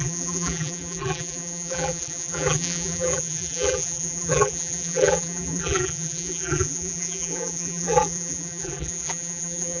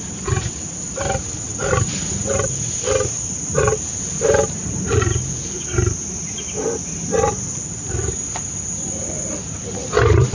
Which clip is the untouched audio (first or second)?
second